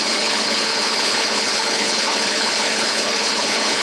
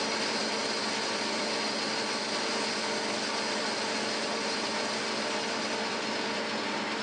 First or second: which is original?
second